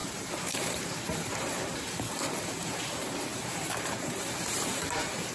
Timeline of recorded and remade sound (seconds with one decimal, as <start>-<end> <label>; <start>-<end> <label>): 0.0-5.3 remade